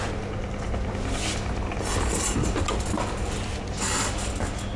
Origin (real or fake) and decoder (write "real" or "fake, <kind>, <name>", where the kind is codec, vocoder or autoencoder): real